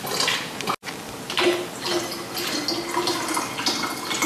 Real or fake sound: real